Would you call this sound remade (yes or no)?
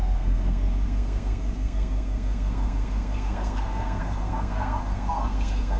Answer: yes